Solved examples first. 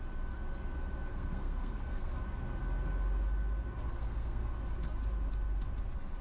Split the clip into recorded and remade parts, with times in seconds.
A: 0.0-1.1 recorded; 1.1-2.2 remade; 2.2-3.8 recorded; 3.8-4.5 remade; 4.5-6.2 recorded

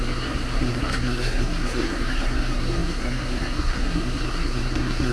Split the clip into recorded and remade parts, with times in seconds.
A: 0.0-5.1 remade

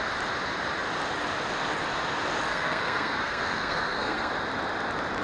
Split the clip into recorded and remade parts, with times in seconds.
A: 0.0-2.5 recorded; 2.5-4.3 remade; 4.3-5.2 recorded

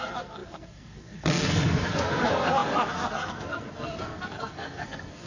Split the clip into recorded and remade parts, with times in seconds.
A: 0.0-5.3 remade

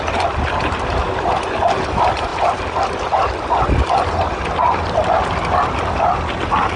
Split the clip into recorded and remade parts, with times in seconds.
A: 0.0-6.8 recorded